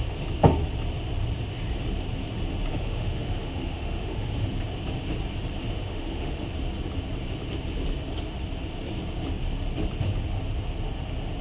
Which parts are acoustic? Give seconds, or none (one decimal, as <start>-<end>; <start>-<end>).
0.0-2.7; 4.5-5.6; 6.5-11.4